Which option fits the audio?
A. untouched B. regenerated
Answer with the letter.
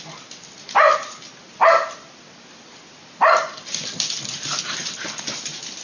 A